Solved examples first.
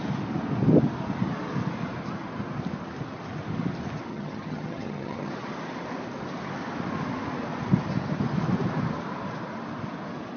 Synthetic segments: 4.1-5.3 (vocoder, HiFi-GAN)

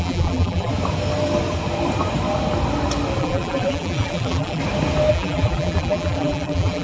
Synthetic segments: 0.0-0.7 (vocoder, BigVGAN v2); 3.2-4.6; 5.1-6.8

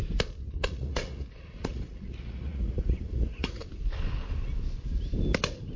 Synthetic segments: 0.6-3.7 (vocoder, Vocos)